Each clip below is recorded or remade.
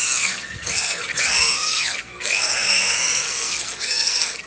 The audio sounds remade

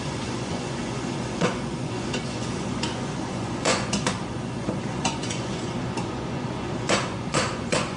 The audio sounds remade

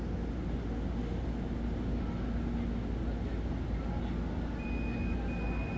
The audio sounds recorded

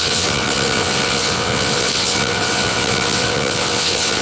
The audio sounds remade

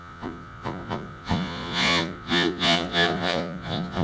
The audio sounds remade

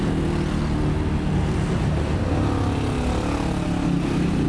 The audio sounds recorded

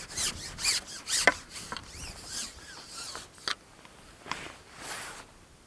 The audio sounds recorded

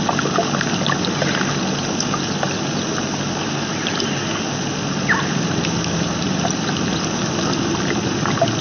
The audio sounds recorded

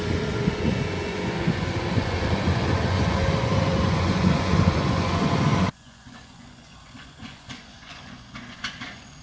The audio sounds remade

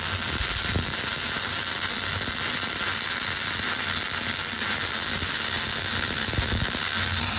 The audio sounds recorded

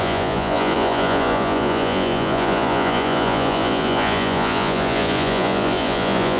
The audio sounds remade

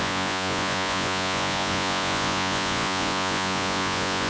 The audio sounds remade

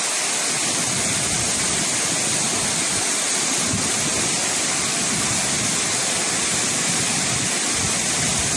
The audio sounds recorded